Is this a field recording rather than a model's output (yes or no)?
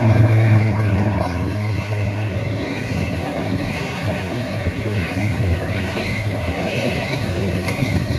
no